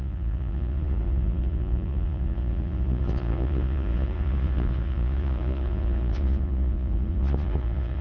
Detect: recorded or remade remade